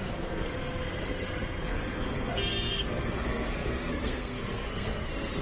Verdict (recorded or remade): remade